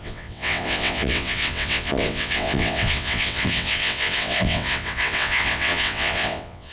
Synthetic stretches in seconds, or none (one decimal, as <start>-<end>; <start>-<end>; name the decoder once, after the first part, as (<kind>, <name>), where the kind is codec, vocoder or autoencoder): 0.0-6.7 (vocoder, WaveNeXt)

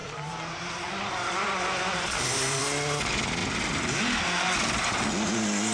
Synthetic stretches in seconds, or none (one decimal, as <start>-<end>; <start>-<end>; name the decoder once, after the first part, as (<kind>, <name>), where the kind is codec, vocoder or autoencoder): 0.0-2.6 (vocoder, BigVGAN v2); 3.4-5.1